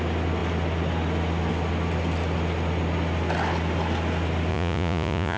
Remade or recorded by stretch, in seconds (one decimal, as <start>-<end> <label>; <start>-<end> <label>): 0.0-4.5 recorded; 4.5-5.4 remade